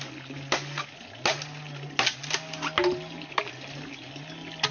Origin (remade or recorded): recorded